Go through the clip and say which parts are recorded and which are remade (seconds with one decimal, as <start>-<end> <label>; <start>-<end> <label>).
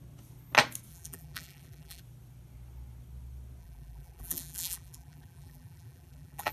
0.0-0.9 recorded; 0.9-2.0 remade; 2.0-3.6 recorded; 3.6-6.5 remade